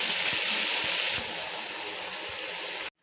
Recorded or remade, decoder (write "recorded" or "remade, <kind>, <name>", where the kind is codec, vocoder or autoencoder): recorded